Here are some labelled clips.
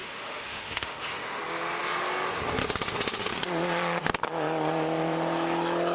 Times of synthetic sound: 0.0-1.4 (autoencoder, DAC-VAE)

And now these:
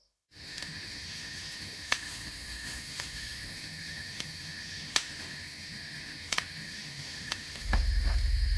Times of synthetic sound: 0.0-8.6 (autoencoder, DAC-VAE)

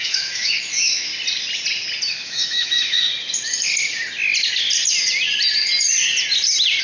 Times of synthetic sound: 0.0-1.1 (autoencoder, DAC-VAE); 2.1-3.1

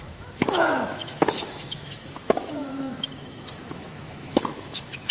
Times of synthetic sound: 0.0-5.1 (autoencoder, DAC-VAE)

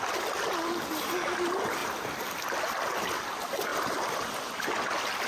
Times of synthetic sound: none

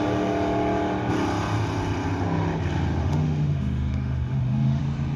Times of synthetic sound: 3.0-4.8 (autoencoder, DAC-VAE)